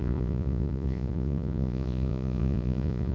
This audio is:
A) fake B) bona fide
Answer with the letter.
A